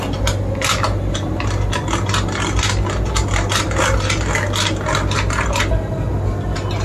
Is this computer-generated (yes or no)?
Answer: no